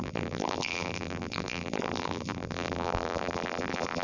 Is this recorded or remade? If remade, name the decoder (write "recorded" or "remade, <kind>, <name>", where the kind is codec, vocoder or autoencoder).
remade, vocoder, BigVGAN v2